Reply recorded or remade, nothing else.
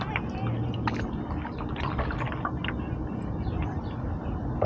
recorded